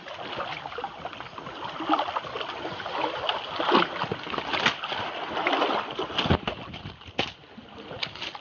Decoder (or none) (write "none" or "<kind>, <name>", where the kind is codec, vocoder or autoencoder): none